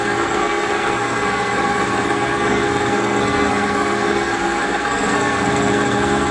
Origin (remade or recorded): remade